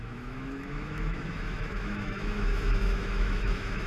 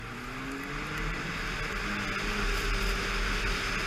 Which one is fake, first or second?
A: first